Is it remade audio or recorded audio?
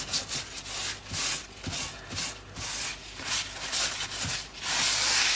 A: recorded